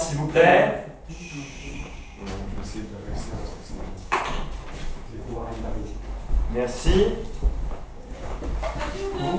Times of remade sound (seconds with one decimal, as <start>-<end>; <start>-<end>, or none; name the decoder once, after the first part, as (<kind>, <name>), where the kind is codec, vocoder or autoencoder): 1.6-4.2 (codec, DAC); 5.1-6.0; 7.9-8.4